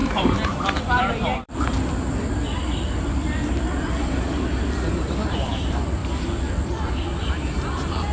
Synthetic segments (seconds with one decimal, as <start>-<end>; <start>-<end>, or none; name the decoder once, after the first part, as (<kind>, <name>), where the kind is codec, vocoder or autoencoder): 0.0-8.1 (vocoder, BigVGAN v2)